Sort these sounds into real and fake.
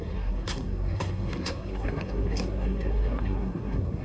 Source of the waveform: fake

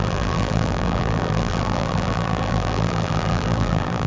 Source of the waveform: fake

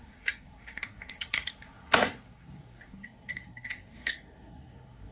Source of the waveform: fake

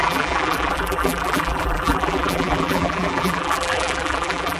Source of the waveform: fake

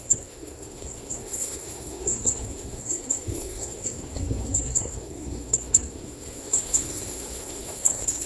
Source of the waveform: fake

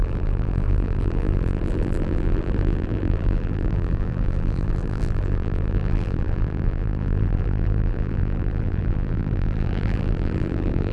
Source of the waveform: fake